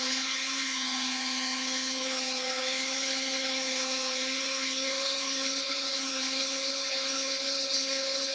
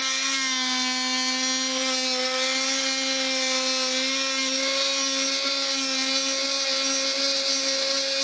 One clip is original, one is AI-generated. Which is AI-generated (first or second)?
first